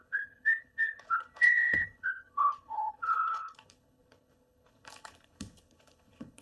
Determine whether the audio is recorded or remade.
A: remade